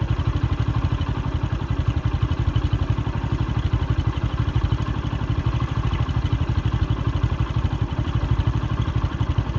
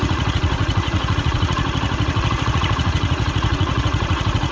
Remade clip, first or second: second